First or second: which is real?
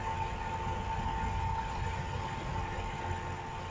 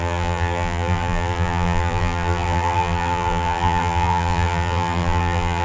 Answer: first